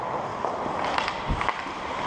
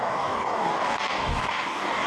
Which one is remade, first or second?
second